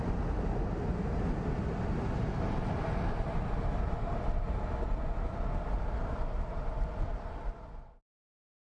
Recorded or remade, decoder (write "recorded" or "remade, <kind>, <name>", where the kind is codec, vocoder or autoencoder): recorded